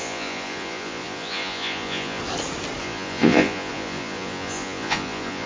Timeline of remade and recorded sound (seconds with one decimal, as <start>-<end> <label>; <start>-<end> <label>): 0.0-2.2 remade; 2.2-2.8 recorded; 2.8-5.5 remade